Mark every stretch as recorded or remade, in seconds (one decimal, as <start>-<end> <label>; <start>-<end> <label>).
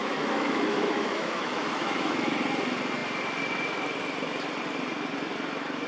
0.0-2.3 remade; 2.3-5.9 recorded